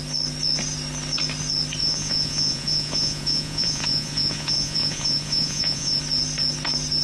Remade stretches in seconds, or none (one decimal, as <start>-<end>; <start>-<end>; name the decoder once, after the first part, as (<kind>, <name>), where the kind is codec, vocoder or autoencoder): 1.8-6.0 (vocoder, Vocos)